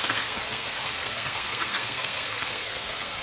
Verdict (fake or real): fake